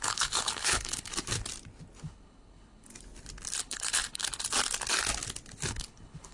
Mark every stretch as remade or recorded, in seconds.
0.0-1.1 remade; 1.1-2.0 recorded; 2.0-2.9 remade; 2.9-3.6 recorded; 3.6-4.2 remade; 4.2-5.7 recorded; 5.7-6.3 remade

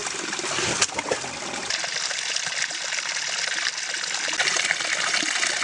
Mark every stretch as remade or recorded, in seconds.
0.0-5.6 recorded

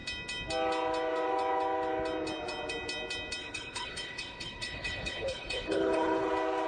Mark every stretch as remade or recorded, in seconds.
0.0-3.4 recorded; 3.4-6.3 remade; 6.3-6.7 recorded

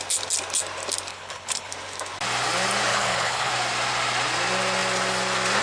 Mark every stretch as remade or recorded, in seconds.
0.0-1.1 recorded; 1.1-1.7 remade; 1.7-2.9 recorded; 2.9-3.5 remade; 3.5-5.6 recorded

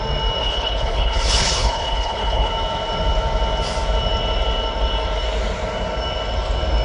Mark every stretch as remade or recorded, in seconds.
0.0-0.4 recorded; 0.4-2.5 remade; 2.5-6.8 recorded

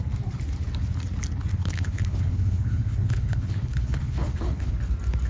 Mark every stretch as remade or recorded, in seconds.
0.0-1.5 recorded; 1.5-4.7 remade; 4.7-5.3 recorded

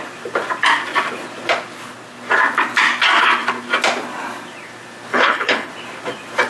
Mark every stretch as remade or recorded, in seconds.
0.0-5.1 recorded; 5.1-5.7 remade; 5.7-6.5 recorded

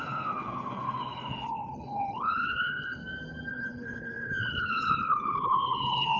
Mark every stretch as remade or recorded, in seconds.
0.0-3.0 remade; 3.0-3.5 recorded; 3.5-6.2 remade